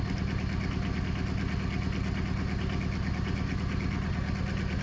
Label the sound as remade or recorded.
recorded